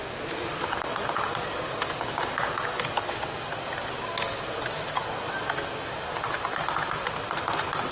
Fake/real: real